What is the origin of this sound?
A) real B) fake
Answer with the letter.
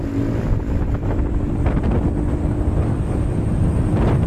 A